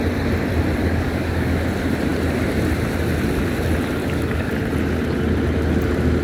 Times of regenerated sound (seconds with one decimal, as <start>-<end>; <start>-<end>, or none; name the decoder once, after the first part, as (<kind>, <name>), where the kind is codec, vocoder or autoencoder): 0.8-1.6 (codec, DAC); 4.0-4.5